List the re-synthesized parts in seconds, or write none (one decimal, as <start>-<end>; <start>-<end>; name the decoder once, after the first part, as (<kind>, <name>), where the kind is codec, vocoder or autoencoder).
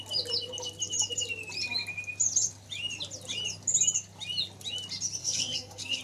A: 5.2-6.0 (codec, SNAC)